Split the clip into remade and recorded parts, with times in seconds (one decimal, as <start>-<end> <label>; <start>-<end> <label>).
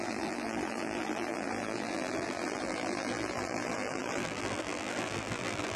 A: 0.0-5.8 remade